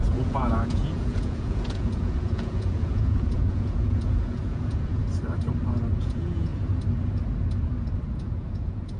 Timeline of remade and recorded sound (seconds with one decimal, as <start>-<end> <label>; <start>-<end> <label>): 0.0-5.0 remade; 5.0-6.0 recorded; 6.0-6.5 remade; 6.5-8.2 recorded; 8.2-9.0 remade